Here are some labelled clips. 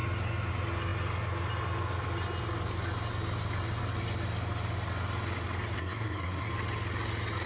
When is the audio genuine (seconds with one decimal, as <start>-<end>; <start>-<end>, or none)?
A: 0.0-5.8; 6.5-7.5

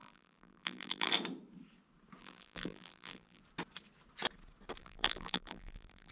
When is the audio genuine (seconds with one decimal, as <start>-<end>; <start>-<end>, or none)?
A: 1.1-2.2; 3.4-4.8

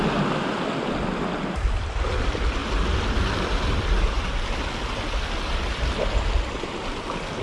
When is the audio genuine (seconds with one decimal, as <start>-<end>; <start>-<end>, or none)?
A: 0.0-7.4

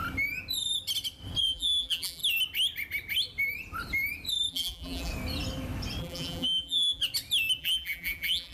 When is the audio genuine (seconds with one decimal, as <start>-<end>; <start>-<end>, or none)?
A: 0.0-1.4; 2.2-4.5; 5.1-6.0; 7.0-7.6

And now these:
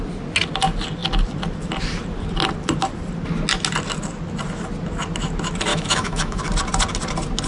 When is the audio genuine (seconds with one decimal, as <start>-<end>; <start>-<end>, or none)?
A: 0.0-5.7; 6.4-7.5

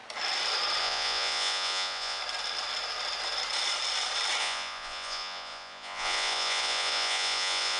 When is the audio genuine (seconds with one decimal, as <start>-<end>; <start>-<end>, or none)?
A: 0.0-0.8; 2.2-4.4